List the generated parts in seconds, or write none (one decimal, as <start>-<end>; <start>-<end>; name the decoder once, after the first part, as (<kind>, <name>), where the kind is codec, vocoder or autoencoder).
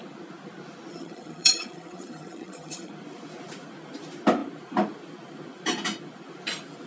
0.9-2.9 (vocoder, HiFi-GAN)